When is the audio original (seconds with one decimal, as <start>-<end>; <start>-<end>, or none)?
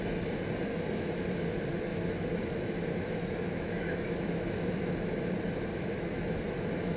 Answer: 0.0-0.7; 1.4-1.9; 5.3-5.7